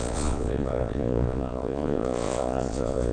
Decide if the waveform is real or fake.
fake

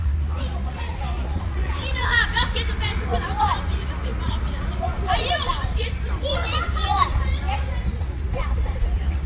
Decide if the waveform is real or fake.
fake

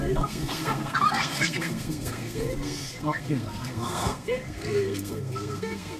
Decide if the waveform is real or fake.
fake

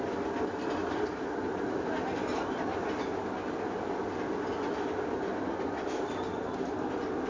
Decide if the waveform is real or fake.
real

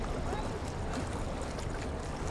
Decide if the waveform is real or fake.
real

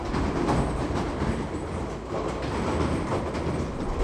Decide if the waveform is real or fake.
real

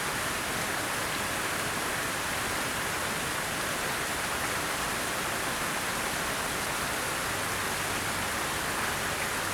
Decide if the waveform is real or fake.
real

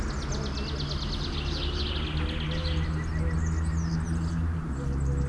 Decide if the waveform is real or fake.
real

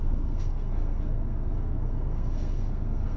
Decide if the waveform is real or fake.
fake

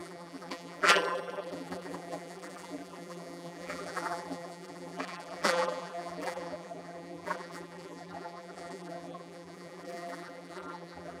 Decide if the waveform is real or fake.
fake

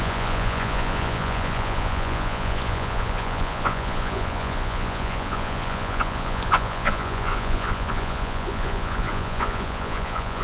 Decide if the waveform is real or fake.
fake